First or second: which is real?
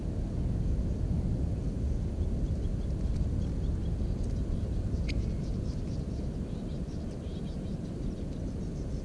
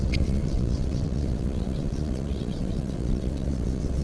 first